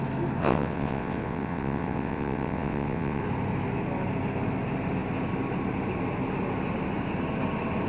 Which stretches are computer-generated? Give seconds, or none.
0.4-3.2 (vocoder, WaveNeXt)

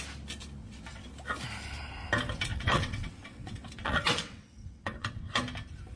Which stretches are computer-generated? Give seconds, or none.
0.6-1.1 (vocoder, WaveNeXt); 2.5-5.3